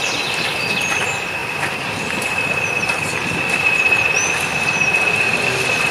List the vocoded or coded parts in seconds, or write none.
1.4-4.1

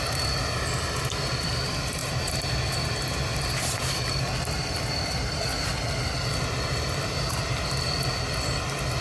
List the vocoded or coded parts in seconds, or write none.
2.0-3.2

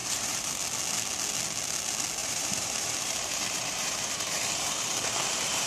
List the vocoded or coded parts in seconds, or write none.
0.0-0.5; 2.2-5.7

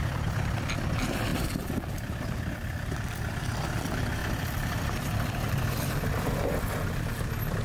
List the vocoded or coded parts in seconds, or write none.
1.3-2.8; 4.2-7.0

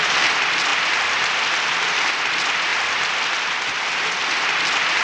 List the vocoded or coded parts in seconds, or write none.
none